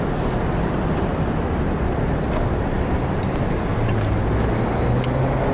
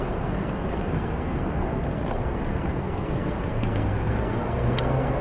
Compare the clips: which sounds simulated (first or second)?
second